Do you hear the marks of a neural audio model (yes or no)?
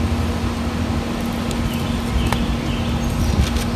no